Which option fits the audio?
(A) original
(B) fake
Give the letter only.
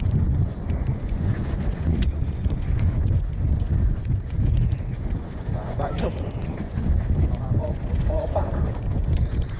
B